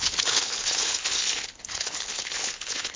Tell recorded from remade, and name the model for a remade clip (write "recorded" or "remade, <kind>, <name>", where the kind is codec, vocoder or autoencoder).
remade, codec, HILCodec